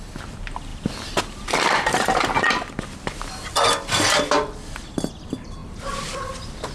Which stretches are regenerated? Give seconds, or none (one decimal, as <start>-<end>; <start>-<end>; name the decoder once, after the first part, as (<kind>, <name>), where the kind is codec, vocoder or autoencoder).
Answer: 0.7-2.7 (vocoder, BigVGAN v2); 5.6-6.7